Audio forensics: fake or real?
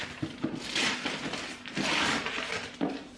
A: real